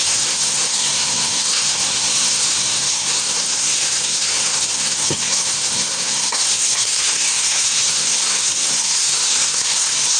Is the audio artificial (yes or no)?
yes